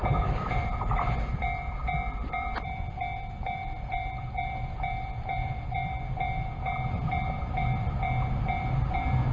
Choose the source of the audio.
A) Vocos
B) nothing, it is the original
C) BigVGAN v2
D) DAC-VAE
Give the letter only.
C